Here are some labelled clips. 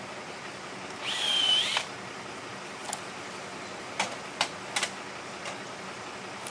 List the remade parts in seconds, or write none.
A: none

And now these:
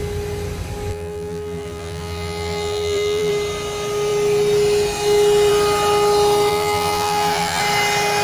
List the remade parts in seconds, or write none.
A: 0.9-3.3 (vocoder, BigVGAN v2); 6.5-7.6

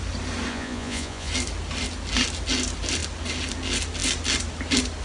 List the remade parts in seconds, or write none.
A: 0.5-1.3 (vocoder, Vocos)

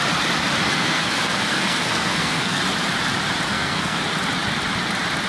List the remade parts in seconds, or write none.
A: 0.7-2.6 (codec, SNAC); 3.5-4.0

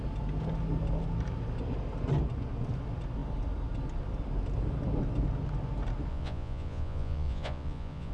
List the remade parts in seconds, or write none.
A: 6.1-8.1 (vocoder, Vocos)

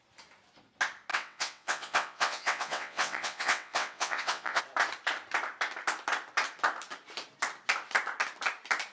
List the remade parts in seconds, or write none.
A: 1.1-4.6 (vocoder, WaveNeXt)

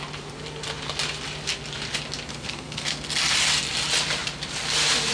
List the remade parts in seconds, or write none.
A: 2.3-3.0 (codec, SNAC)